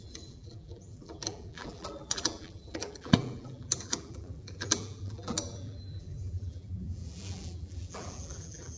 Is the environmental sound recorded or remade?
remade